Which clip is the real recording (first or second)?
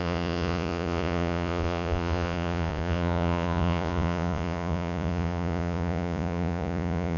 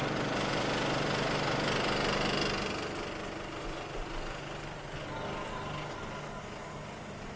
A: second